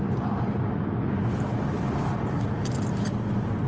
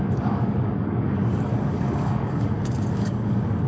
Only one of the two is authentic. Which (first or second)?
first